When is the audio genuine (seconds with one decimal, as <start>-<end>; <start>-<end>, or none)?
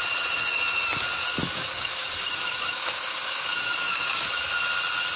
0.0-1.2; 4.3-5.2